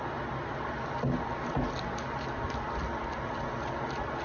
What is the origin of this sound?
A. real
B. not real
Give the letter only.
A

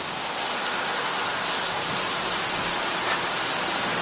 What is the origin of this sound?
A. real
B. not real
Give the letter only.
A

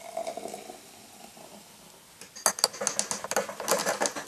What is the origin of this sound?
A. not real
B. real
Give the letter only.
B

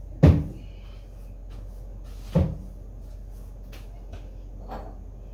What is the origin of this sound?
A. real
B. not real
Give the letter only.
A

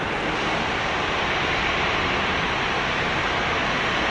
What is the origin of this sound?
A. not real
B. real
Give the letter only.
B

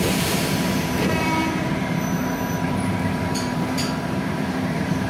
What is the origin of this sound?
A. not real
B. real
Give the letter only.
A